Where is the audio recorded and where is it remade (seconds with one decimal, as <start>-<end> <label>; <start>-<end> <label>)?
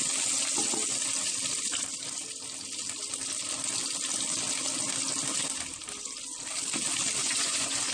0.0-7.2 recorded; 7.2-7.9 remade